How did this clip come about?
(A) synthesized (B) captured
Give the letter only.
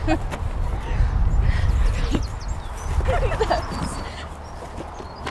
B